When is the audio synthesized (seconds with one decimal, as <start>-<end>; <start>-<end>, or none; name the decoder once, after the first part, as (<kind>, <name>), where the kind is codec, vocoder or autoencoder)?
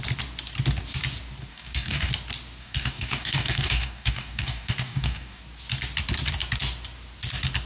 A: 1.5-2.1 (codec, DAC); 2.6-5.4